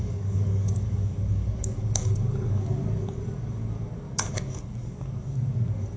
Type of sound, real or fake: fake